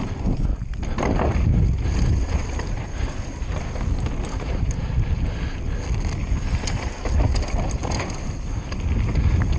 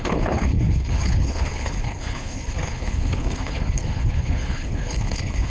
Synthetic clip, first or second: second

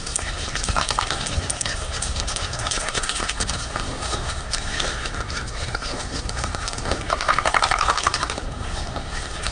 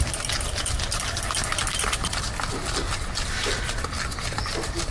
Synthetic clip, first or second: first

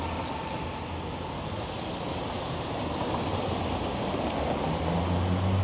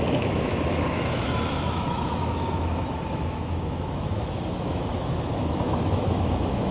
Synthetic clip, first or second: second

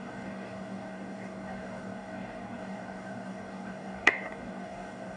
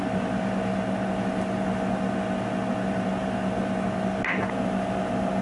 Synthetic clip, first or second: first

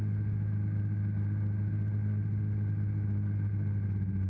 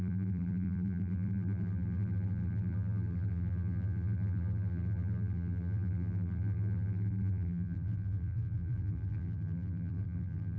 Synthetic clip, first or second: second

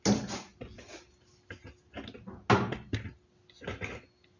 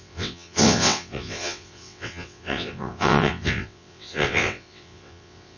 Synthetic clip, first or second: second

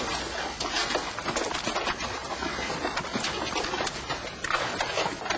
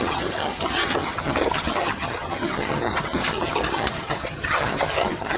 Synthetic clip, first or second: second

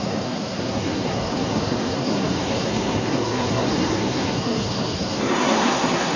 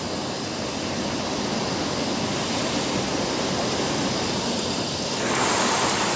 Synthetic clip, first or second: first